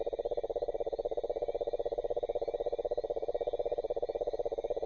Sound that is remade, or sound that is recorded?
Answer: recorded